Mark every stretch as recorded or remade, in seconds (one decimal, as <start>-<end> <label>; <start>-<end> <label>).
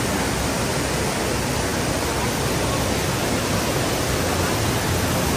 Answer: 0.0-5.4 recorded